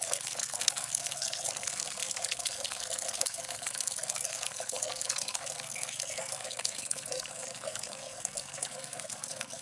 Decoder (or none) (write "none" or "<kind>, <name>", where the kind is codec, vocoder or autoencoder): codec, SNAC